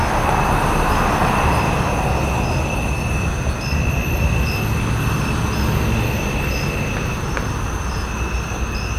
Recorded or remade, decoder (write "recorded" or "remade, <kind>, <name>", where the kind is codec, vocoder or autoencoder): recorded